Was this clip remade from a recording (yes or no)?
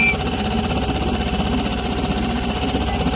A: no